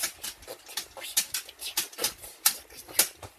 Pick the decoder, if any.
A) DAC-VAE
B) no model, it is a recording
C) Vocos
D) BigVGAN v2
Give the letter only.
B